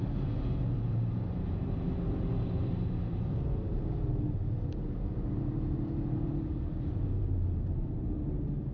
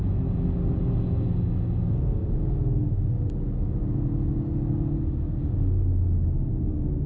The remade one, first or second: first